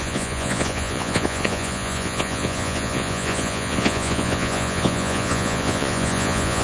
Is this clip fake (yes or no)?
yes